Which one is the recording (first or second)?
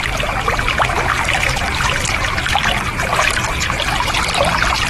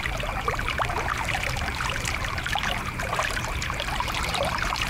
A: first